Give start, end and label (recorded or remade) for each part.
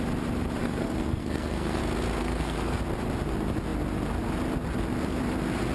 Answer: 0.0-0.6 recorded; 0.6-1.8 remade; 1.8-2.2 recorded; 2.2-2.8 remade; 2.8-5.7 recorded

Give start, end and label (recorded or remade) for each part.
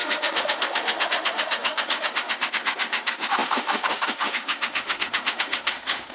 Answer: 0.0-6.1 remade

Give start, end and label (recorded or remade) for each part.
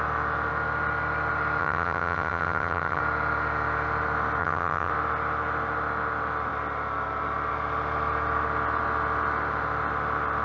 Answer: 0.0-1.6 recorded; 1.6-3.0 remade; 3.0-4.4 recorded; 4.4-4.9 remade; 4.9-10.4 recorded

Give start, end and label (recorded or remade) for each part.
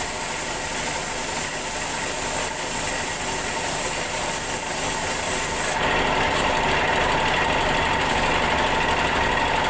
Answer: 0.0-9.7 recorded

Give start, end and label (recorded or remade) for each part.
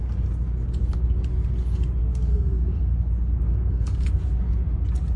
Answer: 0.0-2.3 recorded; 2.3-2.9 remade; 2.9-3.5 recorded; 3.5-4.2 remade; 4.2-5.2 recorded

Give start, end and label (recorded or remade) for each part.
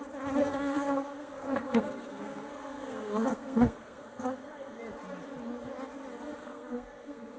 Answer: 0.0-0.4 recorded; 0.4-4.8 remade; 4.8-6.4 recorded; 6.4-7.4 remade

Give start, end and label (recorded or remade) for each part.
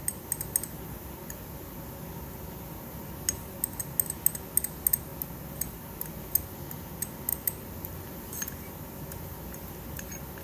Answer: 0.0-10.4 recorded